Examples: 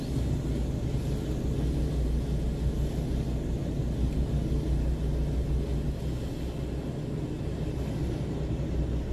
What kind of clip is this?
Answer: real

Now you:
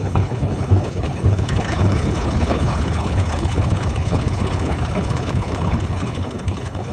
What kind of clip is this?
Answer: fake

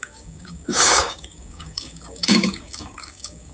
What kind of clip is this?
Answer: fake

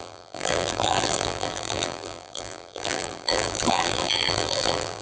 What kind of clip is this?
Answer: fake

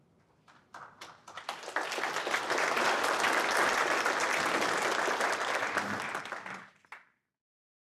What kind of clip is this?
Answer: real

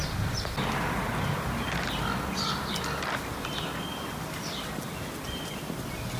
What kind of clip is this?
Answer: real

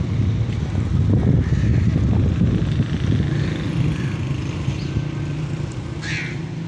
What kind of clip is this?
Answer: real